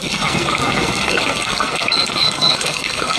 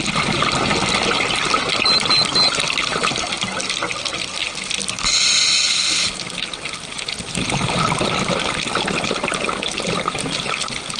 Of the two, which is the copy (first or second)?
first